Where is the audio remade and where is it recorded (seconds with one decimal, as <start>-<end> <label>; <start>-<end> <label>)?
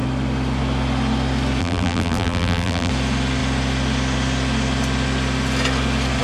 0.0-1.6 recorded; 1.6-2.9 remade; 2.9-6.2 recorded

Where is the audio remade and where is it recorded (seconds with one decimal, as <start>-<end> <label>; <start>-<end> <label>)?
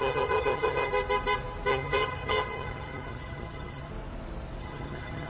0.0-0.9 remade; 0.9-1.7 recorded; 1.7-3.9 remade; 3.9-4.6 recorded; 4.6-5.3 remade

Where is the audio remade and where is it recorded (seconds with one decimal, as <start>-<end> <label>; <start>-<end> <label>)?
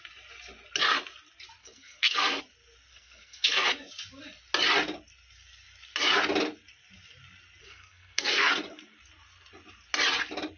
0.0-1.6 recorded; 1.6-2.4 remade; 2.4-2.9 recorded; 2.9-3.7 remade; 3.7-7.6 recorded; 7.6-8.5 remade; 8.5-10.6 recorded